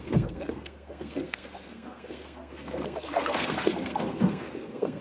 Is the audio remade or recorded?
remade